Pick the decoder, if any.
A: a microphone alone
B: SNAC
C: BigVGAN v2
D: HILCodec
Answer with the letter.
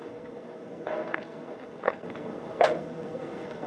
B